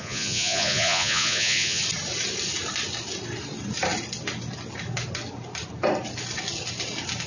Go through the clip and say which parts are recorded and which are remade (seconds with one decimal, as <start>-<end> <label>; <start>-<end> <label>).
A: 0.0-1.8 remade; 1.8-7.3 recorded